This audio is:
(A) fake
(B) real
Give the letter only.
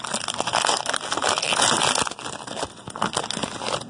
B